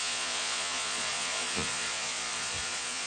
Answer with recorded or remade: remade